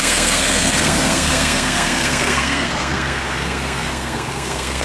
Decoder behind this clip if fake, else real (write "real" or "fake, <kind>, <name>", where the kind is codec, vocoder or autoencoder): fake, codec, SNAC